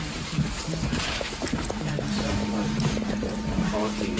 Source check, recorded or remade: remade